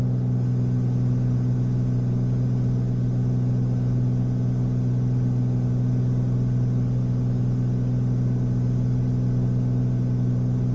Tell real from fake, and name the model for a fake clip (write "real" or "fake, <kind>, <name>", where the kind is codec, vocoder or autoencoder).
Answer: real